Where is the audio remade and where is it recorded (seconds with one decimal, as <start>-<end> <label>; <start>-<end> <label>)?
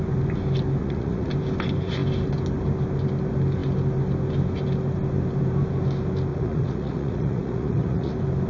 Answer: 0.0-0.8 recorded; 0.8-1.3 remade; 1.3-6.3 recorded; 6.3-8.1 remade; 8.1-8.5 recorded